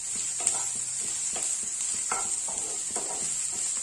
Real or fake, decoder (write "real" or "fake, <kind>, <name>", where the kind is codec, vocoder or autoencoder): real